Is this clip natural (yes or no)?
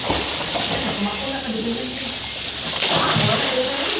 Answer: yes